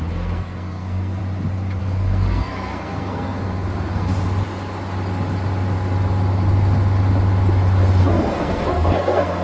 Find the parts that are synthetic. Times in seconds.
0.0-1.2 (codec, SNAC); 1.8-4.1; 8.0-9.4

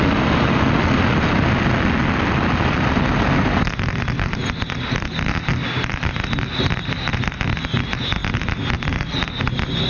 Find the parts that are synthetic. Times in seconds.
none

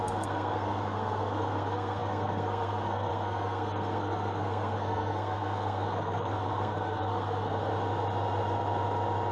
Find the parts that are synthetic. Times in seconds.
0.0-7.7 (codec, SNAC)

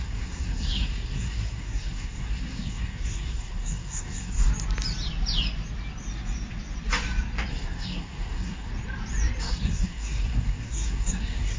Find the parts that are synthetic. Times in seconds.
0.0-4.5 (codec, SNAC); 7.5-8.7; 9.4-11.6

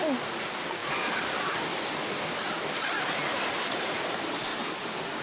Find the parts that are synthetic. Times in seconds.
none